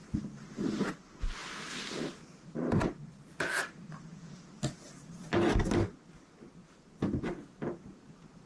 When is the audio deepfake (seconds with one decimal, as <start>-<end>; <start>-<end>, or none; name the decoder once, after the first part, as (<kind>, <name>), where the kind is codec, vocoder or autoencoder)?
none